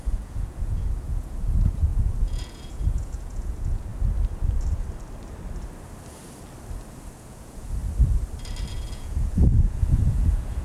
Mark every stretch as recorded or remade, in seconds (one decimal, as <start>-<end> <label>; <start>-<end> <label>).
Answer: 0.0-3.9 remade; 3.9-7.1 recorded; 7.1-7.8 remade; 7.8-8.7 recorded; 8.7-10.6 remade